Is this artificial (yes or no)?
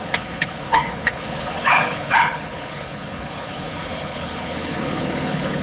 yes